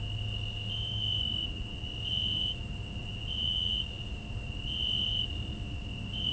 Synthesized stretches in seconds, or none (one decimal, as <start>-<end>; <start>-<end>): 1.4-1.9; 3.0-4.2

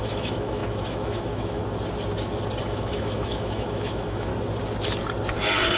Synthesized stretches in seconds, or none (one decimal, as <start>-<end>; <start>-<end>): 0.0-1.6; 2.6-4.3

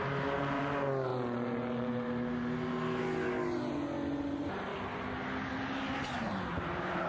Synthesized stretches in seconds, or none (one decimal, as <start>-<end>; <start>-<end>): none